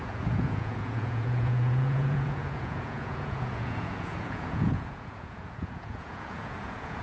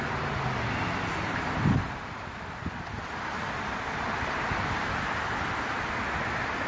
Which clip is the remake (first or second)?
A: first